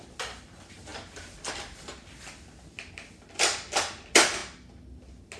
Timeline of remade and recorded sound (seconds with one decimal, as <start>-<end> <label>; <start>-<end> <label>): 0.0-5.4 recorded